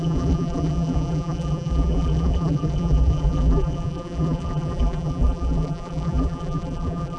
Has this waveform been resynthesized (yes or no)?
yes